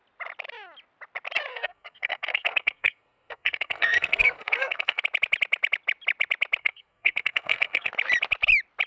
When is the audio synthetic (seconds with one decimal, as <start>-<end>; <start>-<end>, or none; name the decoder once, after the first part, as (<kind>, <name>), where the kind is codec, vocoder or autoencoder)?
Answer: 1.5-5.0 (codec, SNAC); 6.6-7.9